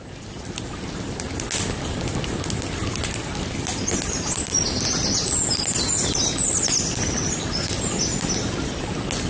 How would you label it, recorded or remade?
recorded